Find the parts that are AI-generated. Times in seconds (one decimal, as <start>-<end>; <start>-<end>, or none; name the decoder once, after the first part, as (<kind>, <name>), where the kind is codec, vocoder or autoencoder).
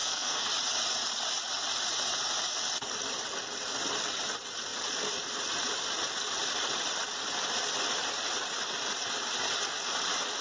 0.0-0.5 (codec, SNAC)